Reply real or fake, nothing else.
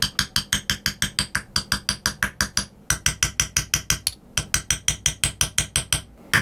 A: real